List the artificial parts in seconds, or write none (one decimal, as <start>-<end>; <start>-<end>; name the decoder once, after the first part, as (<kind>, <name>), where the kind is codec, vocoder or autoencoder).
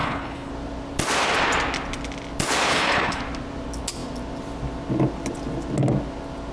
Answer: 0.0-0.5 (codec, HILCodec); 2.7-3.2